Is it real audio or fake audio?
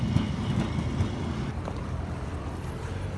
real